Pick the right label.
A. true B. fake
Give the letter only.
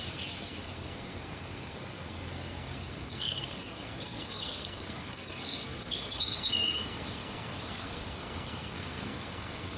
B